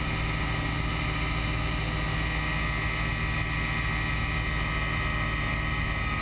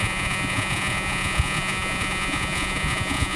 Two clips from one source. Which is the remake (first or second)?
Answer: second